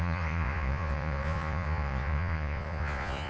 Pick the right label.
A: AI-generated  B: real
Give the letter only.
A